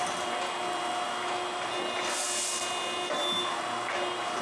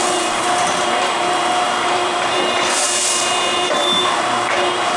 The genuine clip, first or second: first